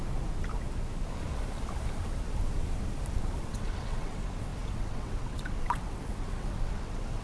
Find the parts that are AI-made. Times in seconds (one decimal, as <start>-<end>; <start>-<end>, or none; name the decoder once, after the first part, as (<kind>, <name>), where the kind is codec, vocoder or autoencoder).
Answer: 3.4-7.2 (vocoder, WaveNeXt)